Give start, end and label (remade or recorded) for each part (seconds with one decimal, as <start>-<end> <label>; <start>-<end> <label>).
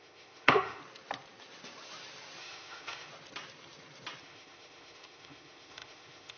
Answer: 0.0-0.8 remade; 0.8-2.4 recorded; 2.4-3.1 remade; 3.1-4.2 recorded; 4.2-6.4 remade